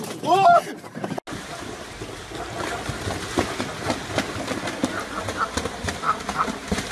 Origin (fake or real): real